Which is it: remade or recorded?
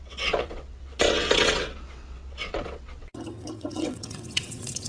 remade